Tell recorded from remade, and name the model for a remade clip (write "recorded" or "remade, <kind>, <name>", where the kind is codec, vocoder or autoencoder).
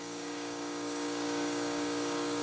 remade, codec, DAC